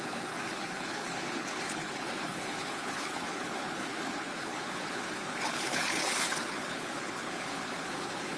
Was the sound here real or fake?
fake